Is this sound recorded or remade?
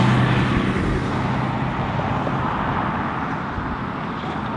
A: recorded